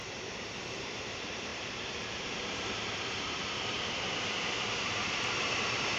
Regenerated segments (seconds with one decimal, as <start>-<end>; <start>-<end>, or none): 0.0-6.0